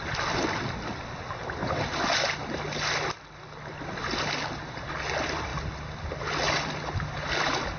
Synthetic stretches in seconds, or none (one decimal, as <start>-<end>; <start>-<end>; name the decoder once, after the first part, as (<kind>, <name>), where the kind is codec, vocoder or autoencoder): 5.5-6.2 (vocoder, BigVGAN v2)